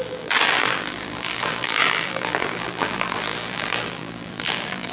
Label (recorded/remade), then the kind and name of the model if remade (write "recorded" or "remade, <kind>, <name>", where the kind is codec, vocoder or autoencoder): remade, vocoder, BigVGAN v2